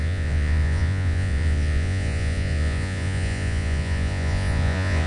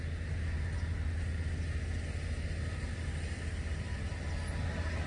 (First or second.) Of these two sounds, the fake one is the first